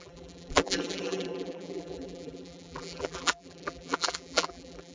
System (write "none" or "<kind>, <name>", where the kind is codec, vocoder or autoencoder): vocoder, BigVGAN v2